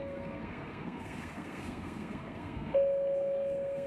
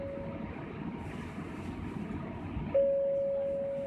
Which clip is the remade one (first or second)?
first